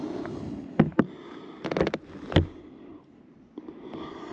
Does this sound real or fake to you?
real